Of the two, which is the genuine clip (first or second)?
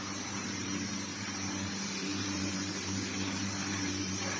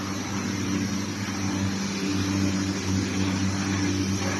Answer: second